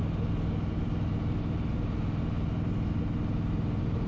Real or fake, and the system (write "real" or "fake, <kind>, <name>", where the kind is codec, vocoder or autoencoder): real